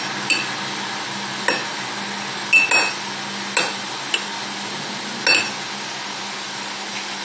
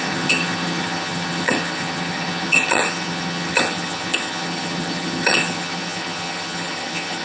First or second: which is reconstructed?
second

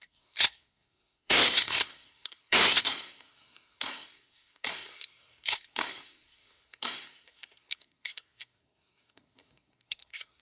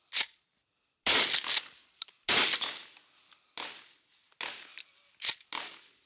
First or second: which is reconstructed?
first